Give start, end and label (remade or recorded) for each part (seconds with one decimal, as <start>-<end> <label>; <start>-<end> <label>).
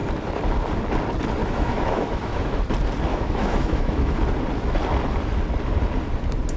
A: 0.0-1.4 recorded; 1.4-2.6 remade; 2.6-3.1 recorded; 3.1-4.2 remade; 4.2-6.6 recorded